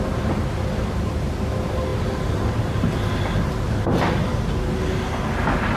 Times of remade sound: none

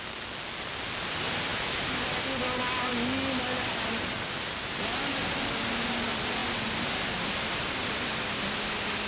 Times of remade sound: none

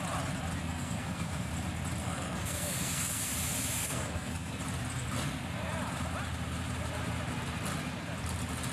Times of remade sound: 0.6-1.5 (codec, SNAC); 2.0-3.3; 3.8-4.6

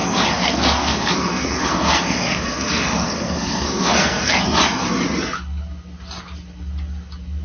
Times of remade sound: 0.0-4.4 (codec, SNAC)

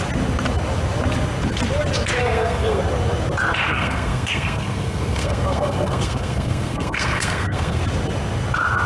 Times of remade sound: 2.2-2.8 (codec, SNAC); 3.7-7.8